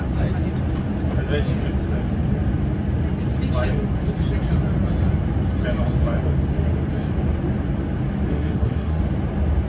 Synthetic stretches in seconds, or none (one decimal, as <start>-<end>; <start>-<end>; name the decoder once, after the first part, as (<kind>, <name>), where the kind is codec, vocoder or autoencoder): 8.3-9.0 (codec, SNAC)